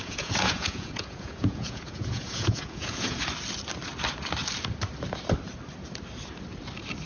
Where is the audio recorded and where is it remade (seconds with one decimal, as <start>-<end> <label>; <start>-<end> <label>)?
0.0-3.2 remade; 3.2-7.1 recorded